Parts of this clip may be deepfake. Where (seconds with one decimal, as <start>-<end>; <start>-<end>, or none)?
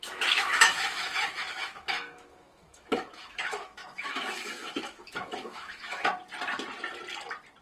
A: 0.0-6.1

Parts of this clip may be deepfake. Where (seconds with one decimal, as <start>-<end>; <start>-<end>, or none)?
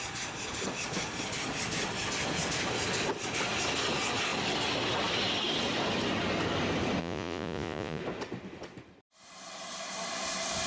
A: 7.0-8.0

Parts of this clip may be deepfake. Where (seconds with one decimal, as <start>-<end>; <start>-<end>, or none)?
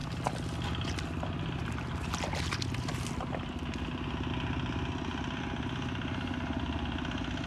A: none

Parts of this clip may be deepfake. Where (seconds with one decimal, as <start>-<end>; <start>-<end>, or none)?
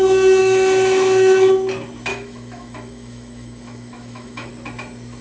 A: 0.4-1.5; 2.1-4.5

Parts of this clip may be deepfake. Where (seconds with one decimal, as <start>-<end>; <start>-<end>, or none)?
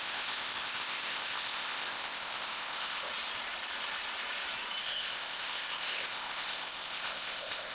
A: 0.0-3.1; 4.8-7.7